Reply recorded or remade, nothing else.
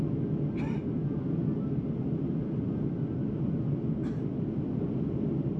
recorded